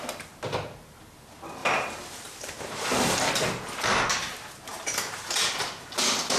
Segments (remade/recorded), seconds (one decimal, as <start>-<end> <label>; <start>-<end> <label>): 0.0-1.6 recorded; 1.6-3.3 remade; 3.3-4.7 recorded; 4.7-5.3 remade; 5.3-6.4 recorded